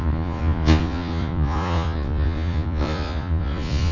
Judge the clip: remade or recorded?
remade